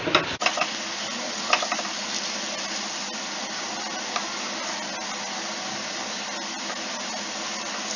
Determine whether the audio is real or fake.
real